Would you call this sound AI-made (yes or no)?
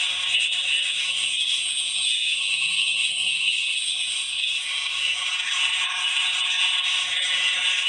yes